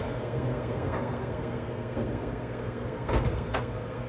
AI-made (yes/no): yes